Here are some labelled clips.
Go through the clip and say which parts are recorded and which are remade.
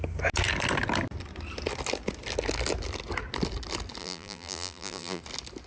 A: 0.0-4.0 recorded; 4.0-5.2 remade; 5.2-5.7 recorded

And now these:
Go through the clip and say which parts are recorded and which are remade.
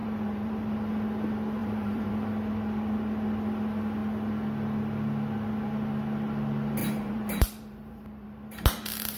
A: 0.0-0.6 remade; 0.6-1.6 recorded; 1.6-2.1 remade; 2.1-6.8 recorded; 6.8-8.4 remade; 8.4-9.2 recorded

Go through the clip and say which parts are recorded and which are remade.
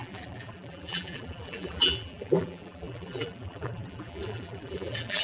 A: 0.0-5.2 remade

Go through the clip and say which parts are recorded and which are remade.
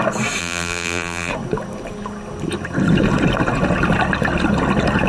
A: 0.0-0.4 recorded; 0.4-1.3 remade; 1.3-5.1 recorded